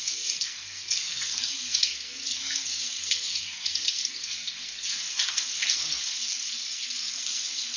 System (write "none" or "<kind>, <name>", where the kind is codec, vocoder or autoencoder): codec, SNAC